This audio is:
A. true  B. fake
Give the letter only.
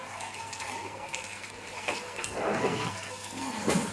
B